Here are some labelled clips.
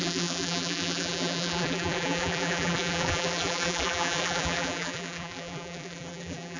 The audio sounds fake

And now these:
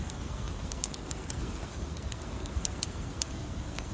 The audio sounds fake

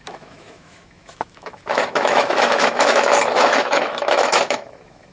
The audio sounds fake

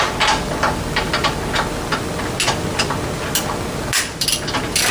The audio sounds real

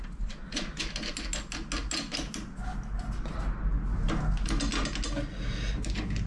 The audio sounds real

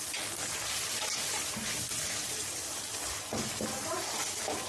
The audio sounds real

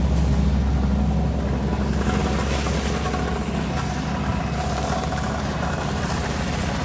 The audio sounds real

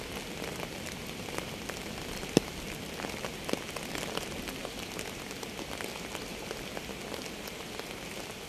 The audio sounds real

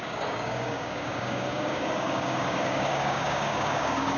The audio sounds fake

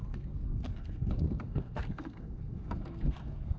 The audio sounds fake